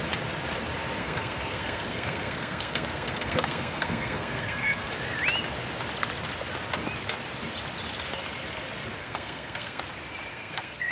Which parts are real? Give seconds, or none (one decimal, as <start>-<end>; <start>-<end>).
0.0-1.0; 4.9-9.0; 9.8-10.3